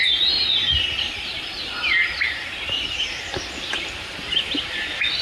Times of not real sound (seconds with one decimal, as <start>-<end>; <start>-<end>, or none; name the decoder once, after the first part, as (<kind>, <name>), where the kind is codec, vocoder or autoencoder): none